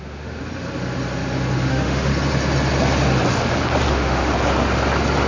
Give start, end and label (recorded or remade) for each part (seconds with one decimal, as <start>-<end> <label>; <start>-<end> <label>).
0.0-0.4 remade; 0.4-1.7 recorded; 1.7-2.1 remade; 2.1-3.9 recorded; 3.9-4.3 remade; 4.3-5.3 recorded